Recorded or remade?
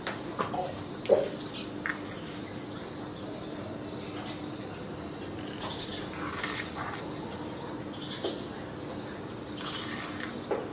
recorded